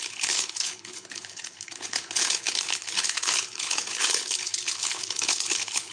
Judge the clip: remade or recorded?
remade